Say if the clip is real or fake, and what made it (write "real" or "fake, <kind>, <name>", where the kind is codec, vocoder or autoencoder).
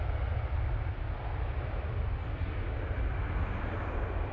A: real